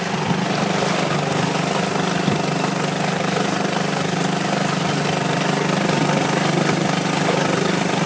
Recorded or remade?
recorded